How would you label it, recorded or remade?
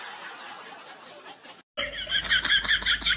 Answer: recorded